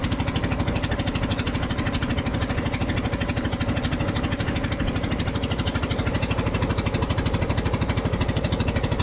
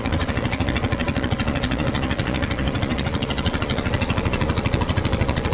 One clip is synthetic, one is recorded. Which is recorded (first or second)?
first